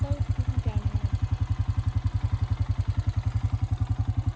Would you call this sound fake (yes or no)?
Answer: no